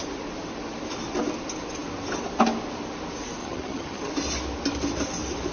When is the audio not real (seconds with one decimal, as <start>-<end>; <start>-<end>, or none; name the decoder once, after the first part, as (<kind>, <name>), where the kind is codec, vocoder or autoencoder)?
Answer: 3.4-4.0 (vocoder, HiFi-GAN)